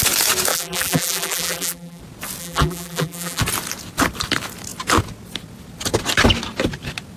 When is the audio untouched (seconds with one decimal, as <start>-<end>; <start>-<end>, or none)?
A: 0.0-0.5; 2.0-2.4; 3.4-7.2